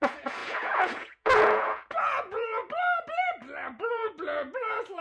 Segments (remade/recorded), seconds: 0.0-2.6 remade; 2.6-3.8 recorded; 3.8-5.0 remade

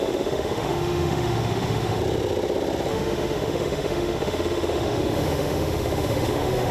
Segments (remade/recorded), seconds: 0.0-2.0 remade; 2.0-2.9 recorded; 2.9-6.7 remade